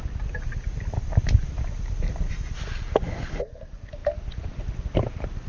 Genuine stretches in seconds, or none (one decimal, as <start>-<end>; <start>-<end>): 0.0-5.5